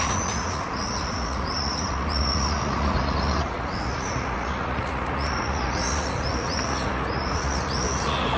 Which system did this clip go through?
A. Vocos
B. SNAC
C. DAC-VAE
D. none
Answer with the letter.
A